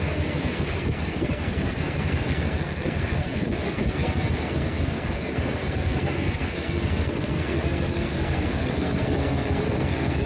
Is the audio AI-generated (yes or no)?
yes